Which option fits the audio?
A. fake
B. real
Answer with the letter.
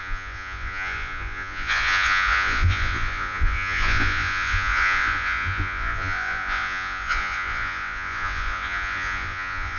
A